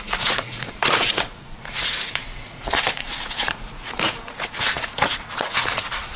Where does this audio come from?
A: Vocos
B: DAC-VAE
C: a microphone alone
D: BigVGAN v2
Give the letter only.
A